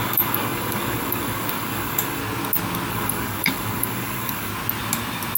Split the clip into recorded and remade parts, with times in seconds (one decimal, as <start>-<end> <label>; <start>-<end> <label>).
0.0-2.2 remade; 2.2-2.9 recorded; 2.9-4.5 remade; 4.5-5.4 recorded